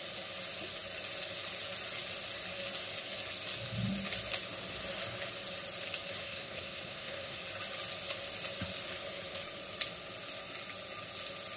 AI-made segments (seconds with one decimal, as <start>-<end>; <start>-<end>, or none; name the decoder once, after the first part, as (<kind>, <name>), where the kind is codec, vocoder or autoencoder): 6.2-7.4 (codec, SNAC)